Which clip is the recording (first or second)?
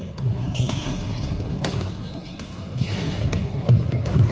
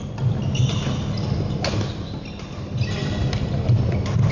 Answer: second